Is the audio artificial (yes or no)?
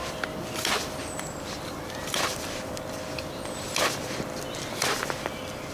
yes